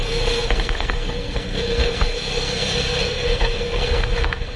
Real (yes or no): no